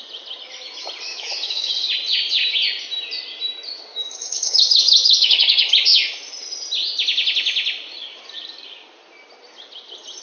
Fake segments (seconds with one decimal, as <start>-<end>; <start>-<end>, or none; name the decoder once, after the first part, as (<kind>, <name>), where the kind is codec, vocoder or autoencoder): 1.1-1.7 (autoencoder, DAC-VAE); 3.9-5.7